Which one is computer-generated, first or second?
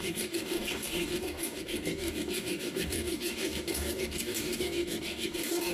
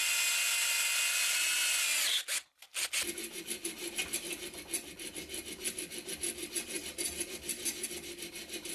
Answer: first